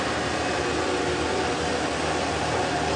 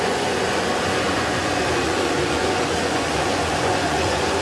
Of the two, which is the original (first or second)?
first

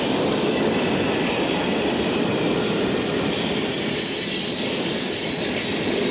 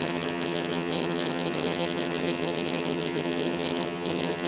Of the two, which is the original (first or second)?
first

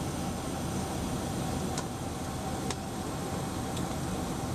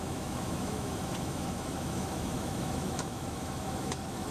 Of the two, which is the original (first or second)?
first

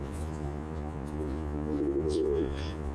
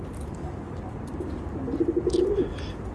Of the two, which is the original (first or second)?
second